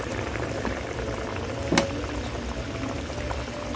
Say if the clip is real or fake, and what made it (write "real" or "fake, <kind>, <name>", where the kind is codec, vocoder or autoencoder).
real